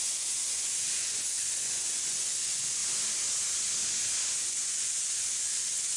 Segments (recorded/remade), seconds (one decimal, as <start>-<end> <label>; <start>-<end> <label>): 0.0-2.8 remade; 2.8-4.4 recorded; 4.4-6.0 remade

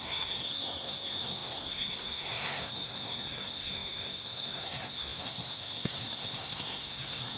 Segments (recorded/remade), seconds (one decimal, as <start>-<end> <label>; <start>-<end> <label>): 0.0-7.4 remade

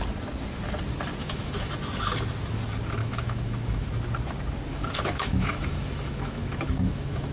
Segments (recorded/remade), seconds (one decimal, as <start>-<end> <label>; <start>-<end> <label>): 0.0-1.2 recorded; 1.2-1.7 remade; 1.7-3.0 recorded; 3.0-3.9 remade; 3.9-4.7 recorded; 4.7-7.3 remade

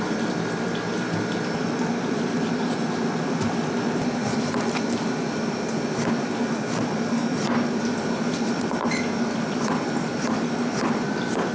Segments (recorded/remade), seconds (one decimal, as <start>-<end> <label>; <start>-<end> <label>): 0.0-11.5 remade

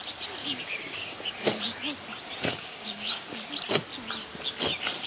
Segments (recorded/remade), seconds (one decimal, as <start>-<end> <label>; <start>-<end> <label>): 0.0-0.4 recorded; 0.4-1.3 remade; 1.3-2.5 recorded; 2.5-3.3 remade; 3.3-5.1 recorded

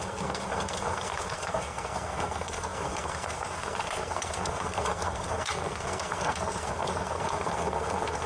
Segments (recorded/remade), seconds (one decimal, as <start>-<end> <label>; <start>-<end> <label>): 0.0-8.3 remade